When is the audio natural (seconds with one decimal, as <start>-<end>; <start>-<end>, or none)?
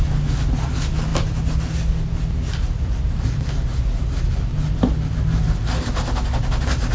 0.0-6.9